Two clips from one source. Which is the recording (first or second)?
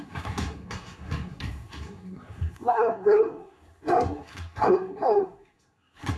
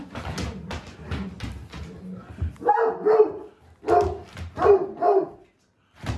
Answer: second